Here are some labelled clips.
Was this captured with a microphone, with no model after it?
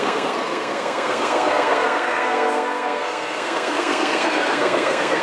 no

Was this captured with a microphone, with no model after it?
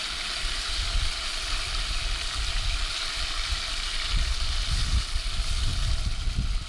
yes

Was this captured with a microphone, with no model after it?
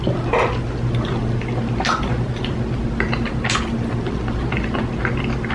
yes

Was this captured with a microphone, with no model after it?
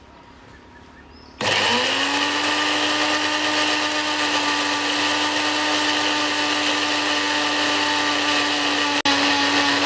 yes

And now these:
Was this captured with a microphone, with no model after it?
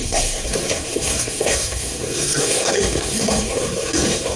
no